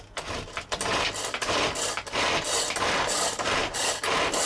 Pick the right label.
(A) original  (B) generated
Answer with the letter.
A